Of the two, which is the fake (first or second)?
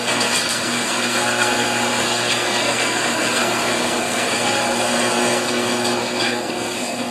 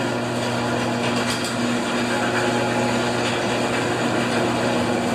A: first